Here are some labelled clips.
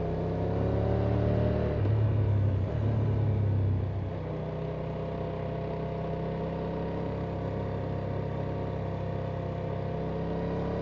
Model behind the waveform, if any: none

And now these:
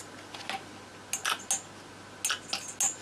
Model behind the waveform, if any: none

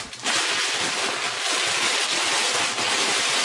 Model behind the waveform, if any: none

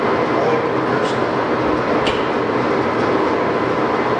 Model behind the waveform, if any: none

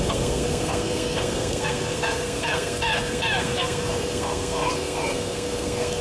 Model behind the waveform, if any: codec, SNAC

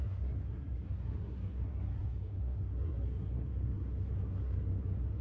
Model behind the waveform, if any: codec, SNAC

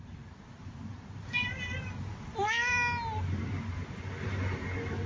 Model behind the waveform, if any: none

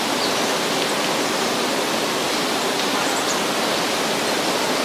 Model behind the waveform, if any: none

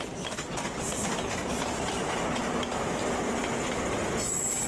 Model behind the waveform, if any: none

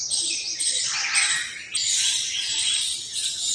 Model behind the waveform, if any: none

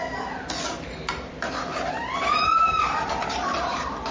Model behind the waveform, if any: none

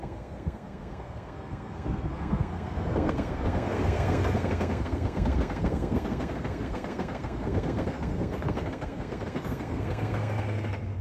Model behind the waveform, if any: codec, SNAC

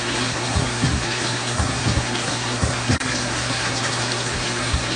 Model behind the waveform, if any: codec, SNAC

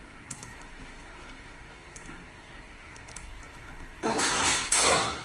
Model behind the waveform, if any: codec, SNAC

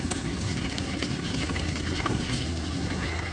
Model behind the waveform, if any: codec, SNAC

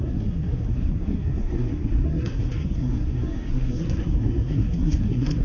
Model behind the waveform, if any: codec, SNAC